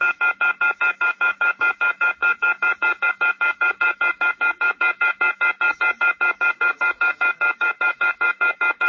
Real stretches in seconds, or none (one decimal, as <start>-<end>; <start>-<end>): none